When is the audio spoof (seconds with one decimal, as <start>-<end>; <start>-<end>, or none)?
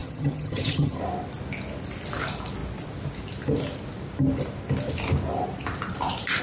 0.0-1.0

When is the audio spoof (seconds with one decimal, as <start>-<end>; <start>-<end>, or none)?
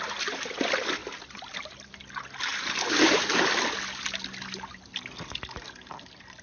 none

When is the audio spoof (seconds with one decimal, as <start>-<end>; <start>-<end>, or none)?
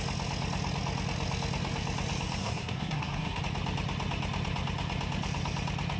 2.4-3.4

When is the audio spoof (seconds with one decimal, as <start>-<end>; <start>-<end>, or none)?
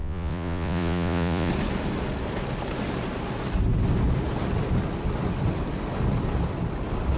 0.0-1.5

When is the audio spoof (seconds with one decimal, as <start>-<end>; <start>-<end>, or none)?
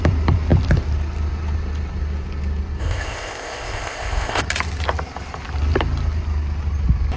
2.8-4.4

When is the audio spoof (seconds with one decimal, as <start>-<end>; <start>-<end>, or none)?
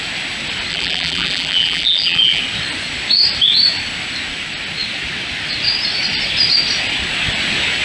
0.7-2.4